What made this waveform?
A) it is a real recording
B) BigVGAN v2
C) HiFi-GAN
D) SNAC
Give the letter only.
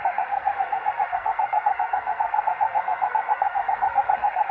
D